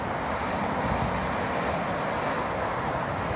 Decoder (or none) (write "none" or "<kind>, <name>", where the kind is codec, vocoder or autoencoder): none